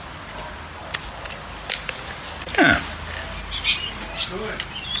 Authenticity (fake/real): real